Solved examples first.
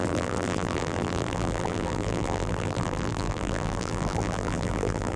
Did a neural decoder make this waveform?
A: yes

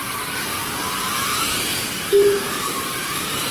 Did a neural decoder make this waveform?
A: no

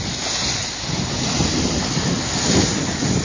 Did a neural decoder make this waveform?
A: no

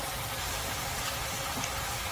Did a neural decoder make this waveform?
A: yes